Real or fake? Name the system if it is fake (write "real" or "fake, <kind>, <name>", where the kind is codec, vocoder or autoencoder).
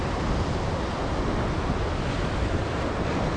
real